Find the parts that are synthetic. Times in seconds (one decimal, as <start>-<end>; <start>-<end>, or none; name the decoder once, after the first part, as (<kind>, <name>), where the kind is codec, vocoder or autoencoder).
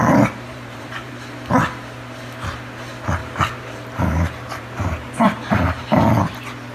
0.0-1.1 (vocoder, BigVGAN v2); 3.2-6.0